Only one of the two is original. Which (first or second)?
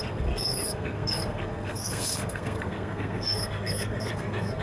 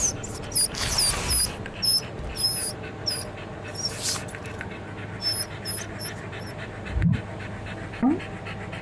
second